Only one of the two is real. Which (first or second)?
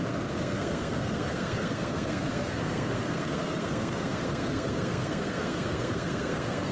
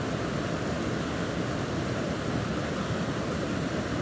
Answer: second